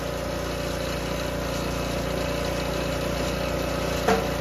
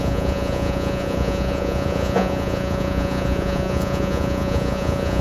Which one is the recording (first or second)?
first